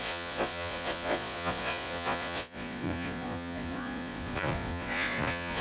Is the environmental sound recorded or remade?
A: remade